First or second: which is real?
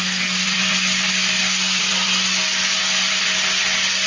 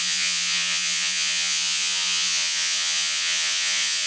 first